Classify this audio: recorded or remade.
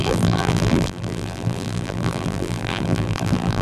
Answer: remade